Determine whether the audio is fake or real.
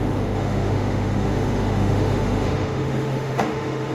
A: fake